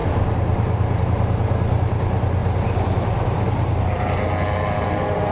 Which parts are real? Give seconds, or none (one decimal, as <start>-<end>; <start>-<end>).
0.0-5.3